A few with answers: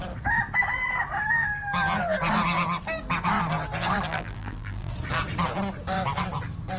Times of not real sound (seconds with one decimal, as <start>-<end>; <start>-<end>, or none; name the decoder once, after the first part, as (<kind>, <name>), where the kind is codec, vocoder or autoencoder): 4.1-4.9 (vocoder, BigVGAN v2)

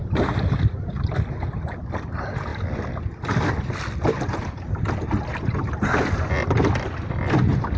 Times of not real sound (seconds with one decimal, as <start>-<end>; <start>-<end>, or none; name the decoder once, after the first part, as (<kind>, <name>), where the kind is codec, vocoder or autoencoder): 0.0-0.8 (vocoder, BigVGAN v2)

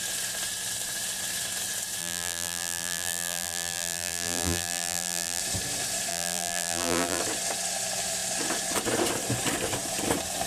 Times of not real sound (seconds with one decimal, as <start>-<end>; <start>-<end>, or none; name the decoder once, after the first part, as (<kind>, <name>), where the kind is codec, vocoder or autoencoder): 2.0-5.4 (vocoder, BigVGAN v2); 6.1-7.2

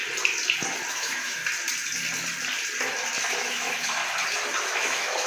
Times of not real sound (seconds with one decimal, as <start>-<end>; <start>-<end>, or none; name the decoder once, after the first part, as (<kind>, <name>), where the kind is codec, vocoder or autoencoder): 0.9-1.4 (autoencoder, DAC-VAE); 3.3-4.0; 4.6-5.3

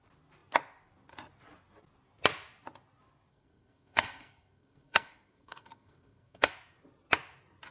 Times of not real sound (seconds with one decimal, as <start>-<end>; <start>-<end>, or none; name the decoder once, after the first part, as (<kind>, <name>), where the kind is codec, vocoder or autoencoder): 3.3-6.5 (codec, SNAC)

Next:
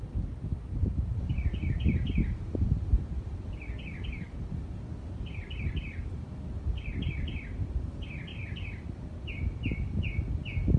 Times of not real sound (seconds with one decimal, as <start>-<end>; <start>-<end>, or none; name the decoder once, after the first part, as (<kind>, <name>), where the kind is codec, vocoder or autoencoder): none

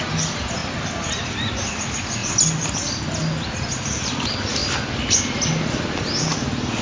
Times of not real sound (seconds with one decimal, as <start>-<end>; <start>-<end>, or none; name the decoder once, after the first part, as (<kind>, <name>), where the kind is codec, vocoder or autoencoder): none